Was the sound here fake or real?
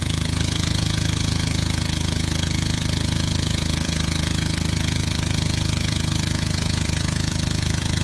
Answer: fake